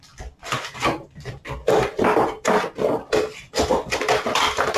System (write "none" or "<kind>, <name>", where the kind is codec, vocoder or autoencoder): vocoder, BigVGAN v2